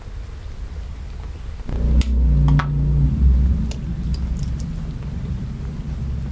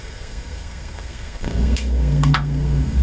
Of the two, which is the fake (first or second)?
second